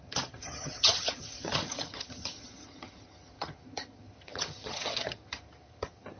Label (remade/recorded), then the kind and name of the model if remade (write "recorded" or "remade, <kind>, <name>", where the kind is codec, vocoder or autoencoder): remade, vocoder, HiFi-GAN